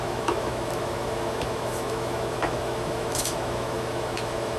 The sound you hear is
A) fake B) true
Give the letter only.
A